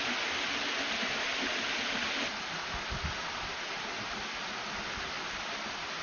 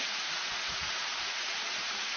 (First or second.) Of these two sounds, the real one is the first